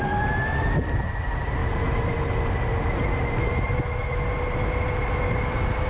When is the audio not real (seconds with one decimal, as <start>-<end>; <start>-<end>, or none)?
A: none